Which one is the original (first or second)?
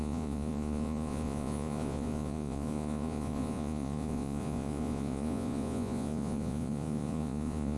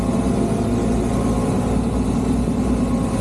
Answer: second